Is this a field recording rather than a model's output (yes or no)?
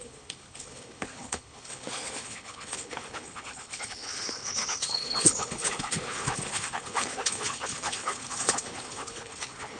no